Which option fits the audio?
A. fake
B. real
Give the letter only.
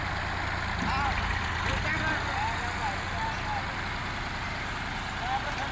B